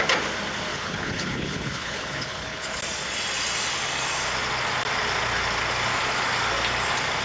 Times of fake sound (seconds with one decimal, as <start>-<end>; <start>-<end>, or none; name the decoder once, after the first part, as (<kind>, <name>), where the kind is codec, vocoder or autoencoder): 0.7-2.8 (codec, HILCodec)